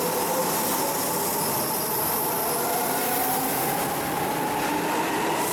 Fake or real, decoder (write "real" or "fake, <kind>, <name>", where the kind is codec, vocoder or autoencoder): real